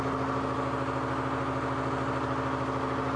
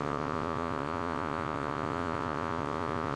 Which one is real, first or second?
first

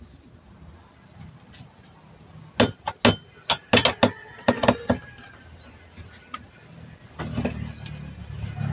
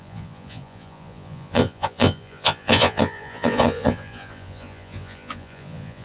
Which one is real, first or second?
first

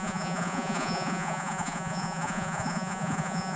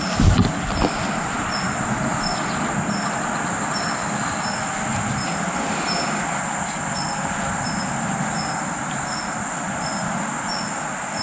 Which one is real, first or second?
second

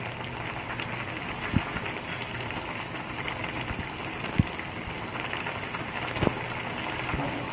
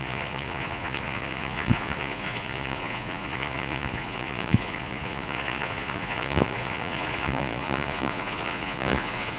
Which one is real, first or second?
first